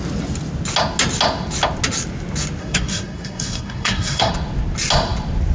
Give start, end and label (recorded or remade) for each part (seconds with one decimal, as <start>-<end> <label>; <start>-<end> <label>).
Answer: 0.0-2.6 recorded; 2.6-4.3 remade; 4.3-5.5 recorded